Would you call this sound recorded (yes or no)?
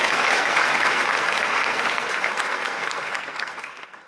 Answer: no